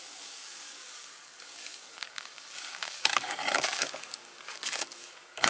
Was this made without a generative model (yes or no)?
no